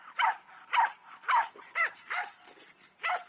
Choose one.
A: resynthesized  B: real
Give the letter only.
B